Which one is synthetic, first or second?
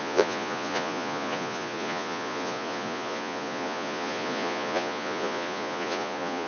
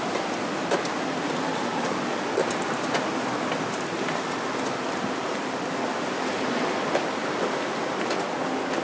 first